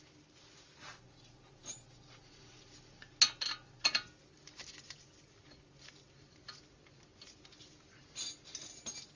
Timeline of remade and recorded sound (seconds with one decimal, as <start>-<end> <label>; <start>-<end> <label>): 0.0-9.2 recorded